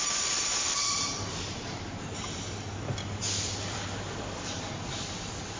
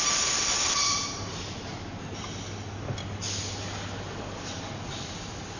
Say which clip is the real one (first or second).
second